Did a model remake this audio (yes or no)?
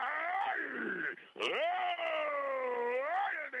no